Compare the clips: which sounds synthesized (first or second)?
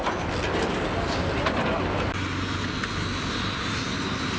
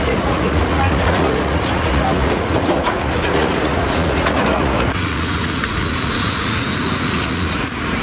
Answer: second